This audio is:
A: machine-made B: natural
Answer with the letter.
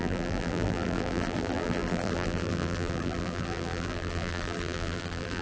A